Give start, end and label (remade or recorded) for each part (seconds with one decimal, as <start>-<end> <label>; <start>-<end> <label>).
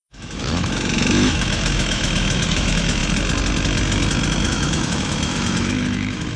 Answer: 0.0-3.0 remade; 3.0-4.5 recorded; 4.5-6.4 remade